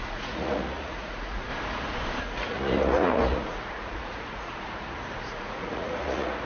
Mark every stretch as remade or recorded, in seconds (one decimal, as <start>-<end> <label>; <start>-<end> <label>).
0.0-1.5 remade; 1.5-2.2 recorded; 2.2-6.5 remade